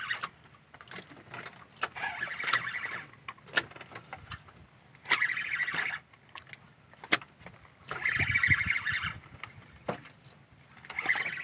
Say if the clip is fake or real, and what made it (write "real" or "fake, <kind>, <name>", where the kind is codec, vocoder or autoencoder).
real